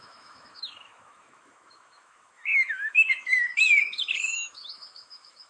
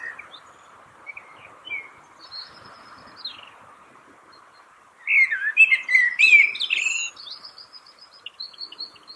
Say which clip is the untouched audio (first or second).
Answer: second